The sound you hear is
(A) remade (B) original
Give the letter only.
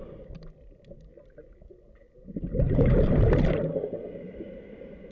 B